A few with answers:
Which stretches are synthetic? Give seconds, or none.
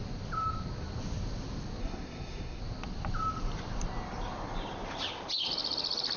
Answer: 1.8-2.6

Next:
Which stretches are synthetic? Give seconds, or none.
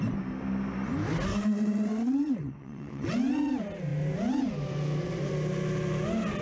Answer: 1.3-3.5